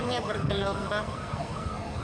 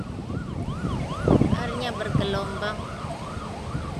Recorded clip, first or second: second